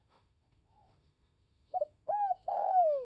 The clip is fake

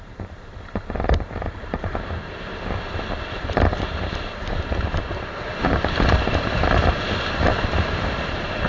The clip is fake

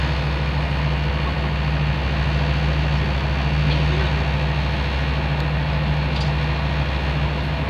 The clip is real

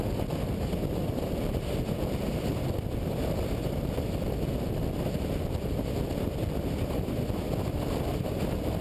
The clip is real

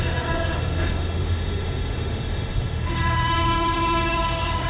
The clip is fake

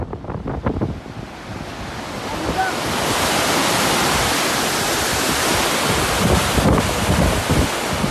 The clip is real